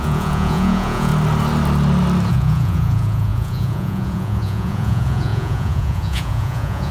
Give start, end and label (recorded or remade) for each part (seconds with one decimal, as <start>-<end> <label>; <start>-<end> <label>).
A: 0.0-1.1 remade; 1.1-2.3 recorded; 2.3-6.9 remade